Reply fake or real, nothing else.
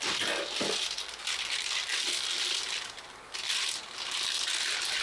real